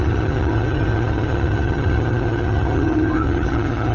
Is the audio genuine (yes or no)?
no